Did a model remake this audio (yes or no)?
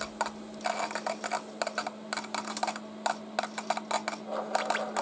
no